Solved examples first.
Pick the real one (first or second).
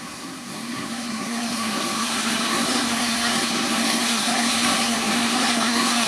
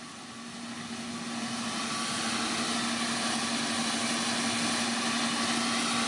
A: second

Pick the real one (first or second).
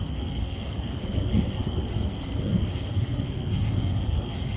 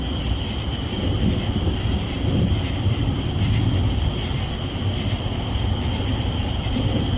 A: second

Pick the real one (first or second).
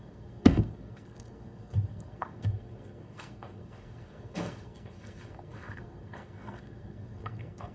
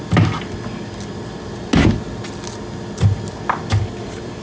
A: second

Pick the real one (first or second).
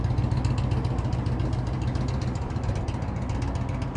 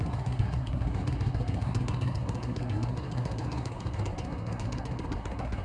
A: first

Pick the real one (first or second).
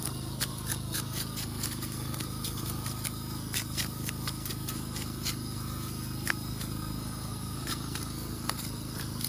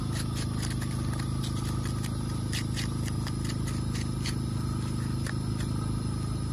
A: second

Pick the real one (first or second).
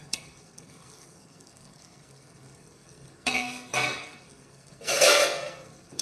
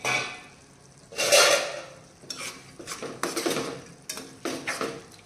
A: second